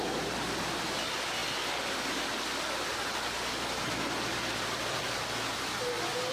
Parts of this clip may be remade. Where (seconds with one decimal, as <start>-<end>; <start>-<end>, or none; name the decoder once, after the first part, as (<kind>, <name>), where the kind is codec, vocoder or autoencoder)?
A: none